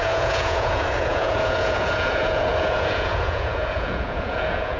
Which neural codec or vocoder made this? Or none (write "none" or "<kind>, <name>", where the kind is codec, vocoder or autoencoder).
vocoder, Vocos